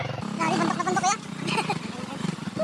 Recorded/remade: recorded